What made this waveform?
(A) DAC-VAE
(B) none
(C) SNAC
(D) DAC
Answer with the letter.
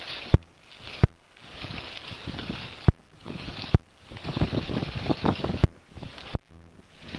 D